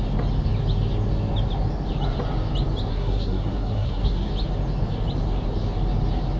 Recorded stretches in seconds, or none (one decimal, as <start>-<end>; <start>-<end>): 0.0-2.9; 4.3-6.4